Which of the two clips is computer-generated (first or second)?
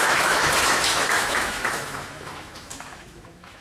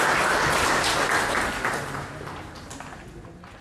first